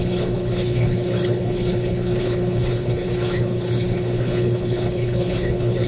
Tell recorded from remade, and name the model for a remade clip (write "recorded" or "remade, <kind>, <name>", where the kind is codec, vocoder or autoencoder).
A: remade, codec, HILCodec